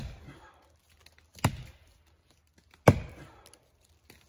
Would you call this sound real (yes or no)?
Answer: yes